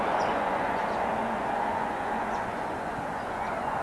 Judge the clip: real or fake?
fake